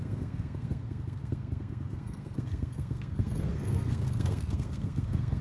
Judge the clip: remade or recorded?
remade